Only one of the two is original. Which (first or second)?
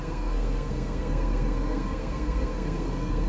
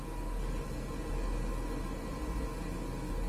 second